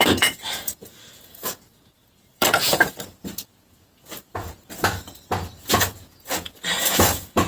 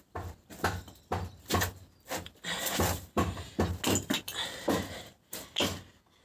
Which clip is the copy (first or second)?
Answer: first